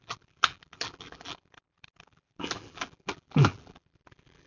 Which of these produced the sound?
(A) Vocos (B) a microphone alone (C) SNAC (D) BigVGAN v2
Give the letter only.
D